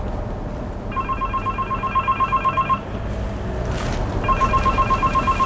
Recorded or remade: recorded